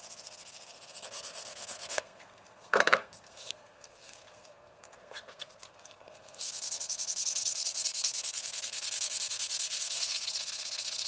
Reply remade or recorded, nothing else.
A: remade